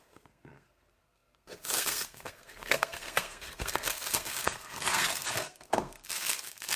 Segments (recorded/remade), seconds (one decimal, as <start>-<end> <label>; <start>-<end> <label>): 0.0-6.8 remade